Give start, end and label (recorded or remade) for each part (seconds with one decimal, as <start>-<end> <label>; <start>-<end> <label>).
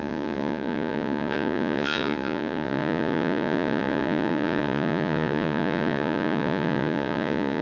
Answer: 0.0-7.6 remade